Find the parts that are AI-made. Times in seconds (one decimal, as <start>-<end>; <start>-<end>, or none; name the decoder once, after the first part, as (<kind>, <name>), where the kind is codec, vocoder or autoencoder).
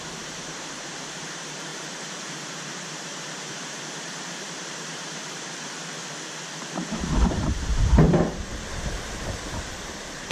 0.0-6.0 (vocoder, BigVGAN v2); 7.2-8.5; 9.7-10.3